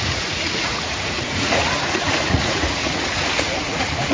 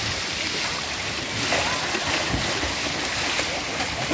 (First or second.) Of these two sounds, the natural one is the second